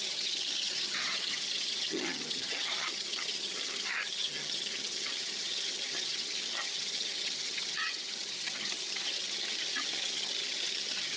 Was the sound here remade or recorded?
remade